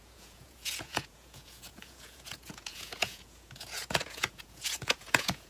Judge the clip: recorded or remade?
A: remade